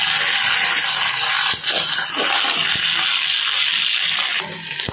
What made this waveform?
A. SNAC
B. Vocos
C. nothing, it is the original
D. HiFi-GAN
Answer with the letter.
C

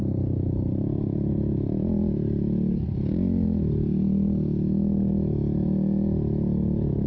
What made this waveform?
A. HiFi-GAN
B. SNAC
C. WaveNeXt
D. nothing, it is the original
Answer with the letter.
D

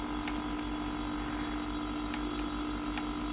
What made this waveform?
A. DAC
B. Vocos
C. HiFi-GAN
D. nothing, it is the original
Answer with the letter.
D